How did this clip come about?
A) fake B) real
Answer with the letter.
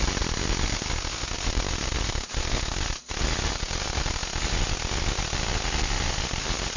B